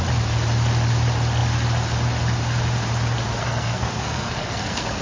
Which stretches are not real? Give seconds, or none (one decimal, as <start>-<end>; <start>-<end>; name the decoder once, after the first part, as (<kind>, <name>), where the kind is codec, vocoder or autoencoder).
3.4-5.0 (codec, SNAC)